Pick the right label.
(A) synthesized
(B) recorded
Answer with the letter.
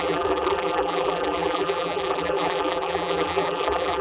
A